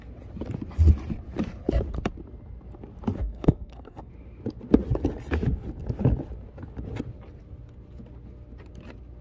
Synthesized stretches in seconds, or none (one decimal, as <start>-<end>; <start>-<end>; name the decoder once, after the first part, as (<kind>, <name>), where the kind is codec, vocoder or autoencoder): 3.2-4.1 (codec, SNAC)